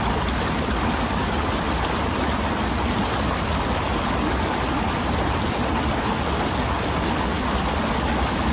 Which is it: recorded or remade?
recorded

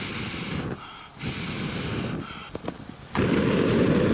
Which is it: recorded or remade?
recorded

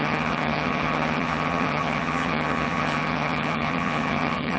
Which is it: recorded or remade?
remade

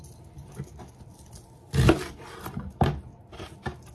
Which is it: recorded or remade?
recorded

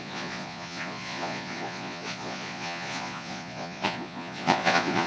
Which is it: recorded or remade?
remade